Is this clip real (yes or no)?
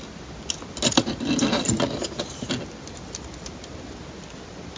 yes